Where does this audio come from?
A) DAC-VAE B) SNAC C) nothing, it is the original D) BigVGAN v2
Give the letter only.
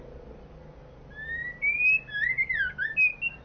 C